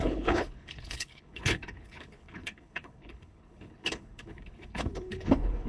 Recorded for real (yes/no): no